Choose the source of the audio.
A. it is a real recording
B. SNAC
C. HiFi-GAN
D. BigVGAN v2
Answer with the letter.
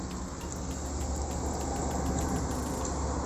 A